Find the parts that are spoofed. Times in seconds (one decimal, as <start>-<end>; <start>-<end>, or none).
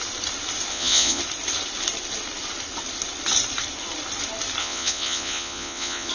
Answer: 0.7-1.2; 4.6-6.1